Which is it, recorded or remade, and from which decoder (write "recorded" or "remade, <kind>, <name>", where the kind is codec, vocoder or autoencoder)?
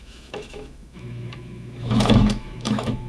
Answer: remade, autoencoder, DAC-VAE